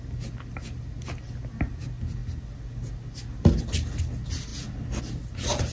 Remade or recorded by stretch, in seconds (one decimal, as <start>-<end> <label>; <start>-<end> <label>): 0.0-5.7 recorded

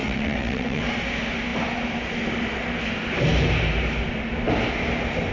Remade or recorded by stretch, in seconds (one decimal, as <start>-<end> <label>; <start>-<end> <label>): 0.0-0.8 remade; 0.8-5.3 recorded

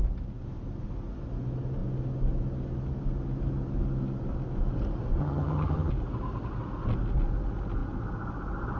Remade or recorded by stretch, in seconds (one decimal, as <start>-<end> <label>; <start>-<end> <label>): 0.0-5.2 recorded; 5.2-5.9 remade; 5.9-8.8 recorded